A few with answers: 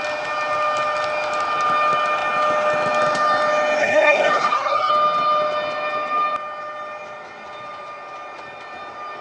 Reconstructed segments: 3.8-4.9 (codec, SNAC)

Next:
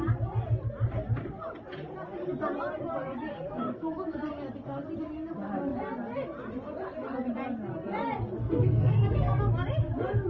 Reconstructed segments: 3.3-4.2 (codec, SNAC); 8.4-9.5

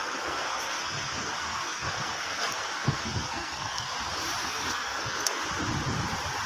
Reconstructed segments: 0.0-3.9 (codec, SNAC); 4.4-5.4

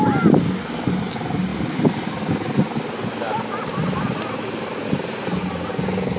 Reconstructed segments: none